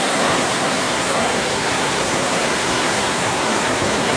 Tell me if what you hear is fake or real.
fake